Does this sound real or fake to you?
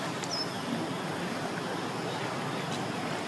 real